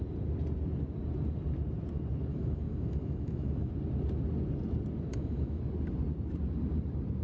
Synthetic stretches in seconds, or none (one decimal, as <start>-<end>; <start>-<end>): 2.3-3.7; 5.1-5.6